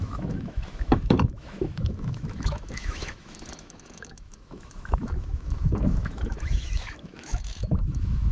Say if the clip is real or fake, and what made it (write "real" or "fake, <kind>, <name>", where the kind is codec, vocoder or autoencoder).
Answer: fake, autoencoder, DAC-VAE